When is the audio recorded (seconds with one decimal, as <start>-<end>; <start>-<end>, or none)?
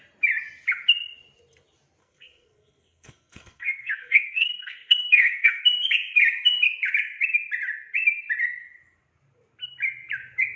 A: 0.0-2.0; 5.6-10.6